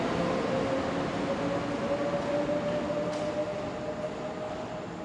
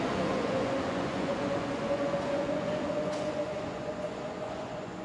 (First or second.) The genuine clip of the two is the first